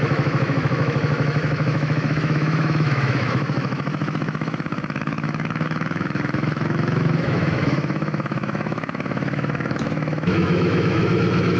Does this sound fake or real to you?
fake